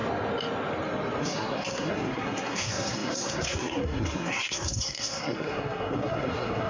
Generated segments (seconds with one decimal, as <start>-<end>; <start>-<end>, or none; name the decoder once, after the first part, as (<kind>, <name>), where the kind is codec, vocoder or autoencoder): 1.2-6.7 (codec, SNAC)